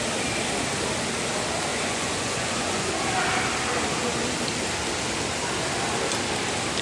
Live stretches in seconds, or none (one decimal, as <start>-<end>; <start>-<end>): 0.0-1.7; 2.9-6.8